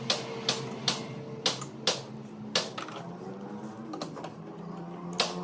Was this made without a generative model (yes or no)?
yes